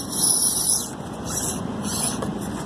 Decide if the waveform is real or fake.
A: fake